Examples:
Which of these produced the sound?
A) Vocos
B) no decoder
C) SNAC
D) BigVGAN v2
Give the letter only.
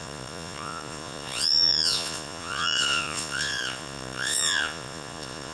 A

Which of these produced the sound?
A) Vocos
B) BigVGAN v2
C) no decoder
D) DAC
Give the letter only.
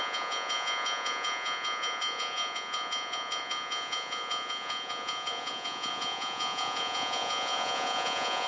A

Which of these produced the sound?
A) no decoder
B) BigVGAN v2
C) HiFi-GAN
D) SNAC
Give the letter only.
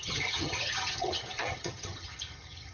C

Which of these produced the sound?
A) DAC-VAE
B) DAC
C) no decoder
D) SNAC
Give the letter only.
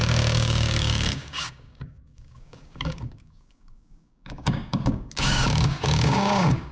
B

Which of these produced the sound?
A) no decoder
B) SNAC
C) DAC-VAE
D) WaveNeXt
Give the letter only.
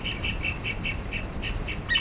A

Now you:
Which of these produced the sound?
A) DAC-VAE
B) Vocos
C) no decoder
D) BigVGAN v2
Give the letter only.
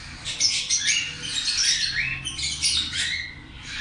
C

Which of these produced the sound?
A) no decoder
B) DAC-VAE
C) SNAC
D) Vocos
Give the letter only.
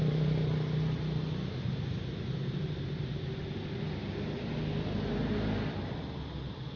A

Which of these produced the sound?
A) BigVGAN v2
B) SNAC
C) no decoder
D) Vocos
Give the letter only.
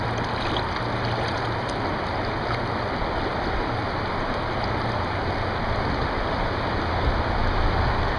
C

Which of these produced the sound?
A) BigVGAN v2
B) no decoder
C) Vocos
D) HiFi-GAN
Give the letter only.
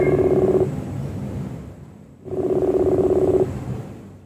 A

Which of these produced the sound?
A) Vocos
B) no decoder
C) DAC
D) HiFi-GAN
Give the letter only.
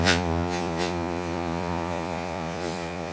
A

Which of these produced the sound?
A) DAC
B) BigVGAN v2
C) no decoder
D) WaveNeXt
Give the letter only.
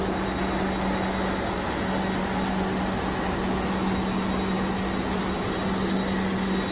C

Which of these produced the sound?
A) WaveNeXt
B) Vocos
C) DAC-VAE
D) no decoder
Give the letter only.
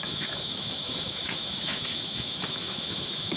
C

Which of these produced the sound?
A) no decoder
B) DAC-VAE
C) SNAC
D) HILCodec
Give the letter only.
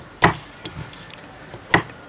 A